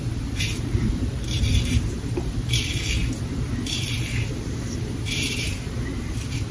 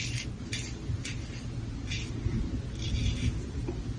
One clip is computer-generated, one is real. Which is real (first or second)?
second